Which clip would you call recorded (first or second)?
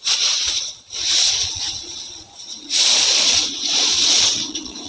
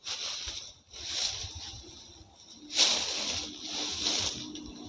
second